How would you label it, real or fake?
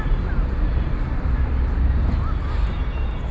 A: real